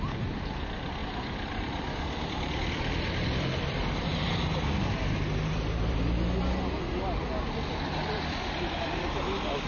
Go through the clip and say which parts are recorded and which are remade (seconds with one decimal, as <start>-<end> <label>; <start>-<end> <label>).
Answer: 0.0-1.0 recorded; 1.0-5.2 remade; 5.2-9.7 recorded